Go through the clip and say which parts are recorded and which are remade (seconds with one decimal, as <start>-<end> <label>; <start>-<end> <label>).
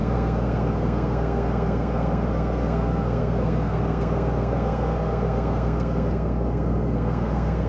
0.0-7.7 remade